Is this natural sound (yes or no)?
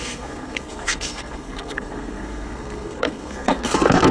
no